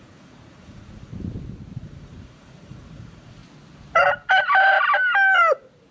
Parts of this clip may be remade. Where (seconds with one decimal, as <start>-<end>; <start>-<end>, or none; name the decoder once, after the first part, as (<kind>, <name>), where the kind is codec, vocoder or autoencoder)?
0.0-1.1 (vocoder, Vocos); 1.8-3.4